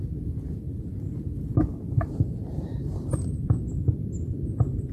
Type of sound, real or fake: real